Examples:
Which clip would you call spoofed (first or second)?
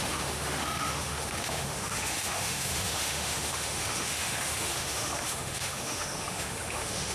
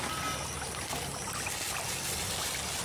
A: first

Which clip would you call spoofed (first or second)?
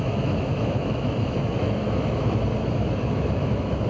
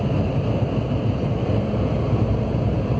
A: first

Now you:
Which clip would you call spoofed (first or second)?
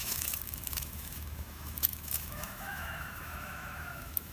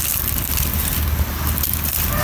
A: first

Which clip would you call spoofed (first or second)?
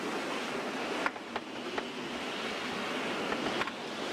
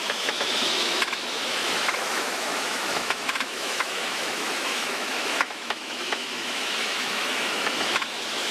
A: second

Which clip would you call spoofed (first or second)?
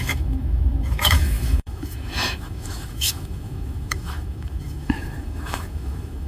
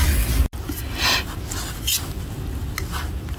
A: first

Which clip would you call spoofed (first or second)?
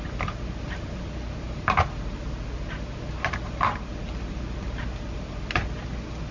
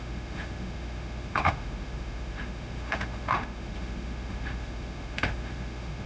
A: second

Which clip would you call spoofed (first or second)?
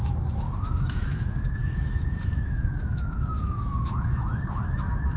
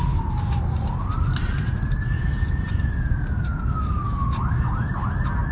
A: first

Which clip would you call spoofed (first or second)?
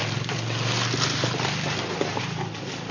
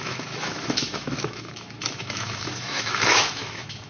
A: second